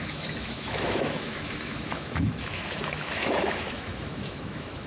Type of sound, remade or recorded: remade